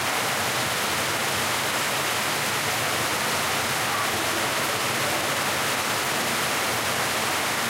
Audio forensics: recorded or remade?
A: recorded